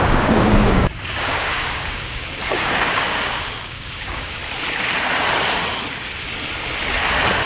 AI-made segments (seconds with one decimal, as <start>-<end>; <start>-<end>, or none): 0.0-4.4